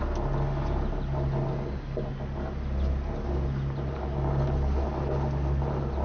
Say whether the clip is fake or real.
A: real